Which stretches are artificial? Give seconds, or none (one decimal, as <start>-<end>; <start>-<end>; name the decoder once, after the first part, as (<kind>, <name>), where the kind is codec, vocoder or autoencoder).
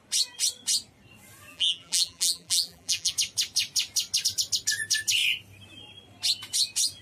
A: 1.5-3.1 (vocoder, BigVGAN v2)